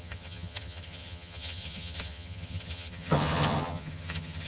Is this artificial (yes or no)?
yes